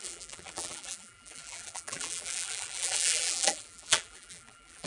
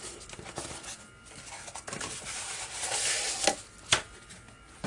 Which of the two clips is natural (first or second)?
second